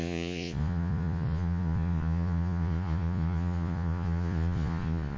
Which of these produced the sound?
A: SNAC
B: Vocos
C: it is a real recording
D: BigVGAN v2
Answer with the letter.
B